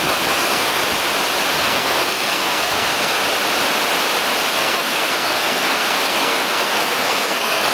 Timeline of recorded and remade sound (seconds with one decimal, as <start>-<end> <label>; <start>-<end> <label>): 0.0-0.8 remade; 0.8-1.5 recorded; 1.5-3.2 remade; 3.2-4.5 recorded; 4.5-7.7 remade